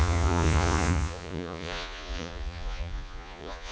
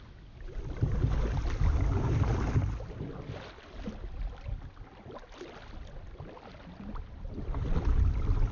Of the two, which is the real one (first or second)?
second